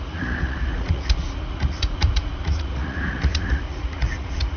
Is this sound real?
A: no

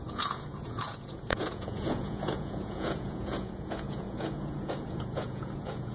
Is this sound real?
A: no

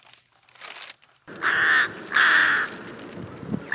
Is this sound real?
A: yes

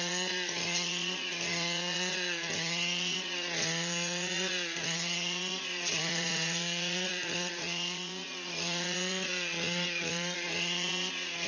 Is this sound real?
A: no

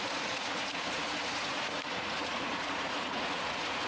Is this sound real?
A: no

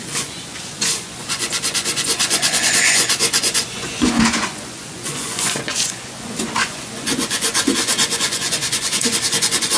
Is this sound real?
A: no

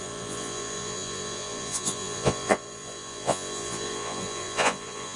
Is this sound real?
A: no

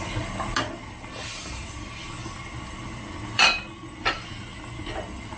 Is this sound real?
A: yes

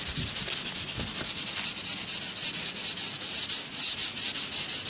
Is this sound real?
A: yes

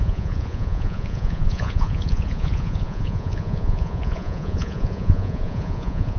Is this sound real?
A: no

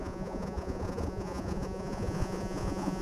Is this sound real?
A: no